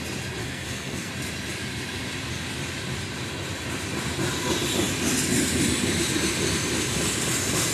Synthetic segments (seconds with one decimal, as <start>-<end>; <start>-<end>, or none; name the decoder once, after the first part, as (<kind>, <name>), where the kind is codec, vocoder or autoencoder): 0.4-1.1 (codec, SNAC)